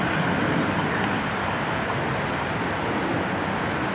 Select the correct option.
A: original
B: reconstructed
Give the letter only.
A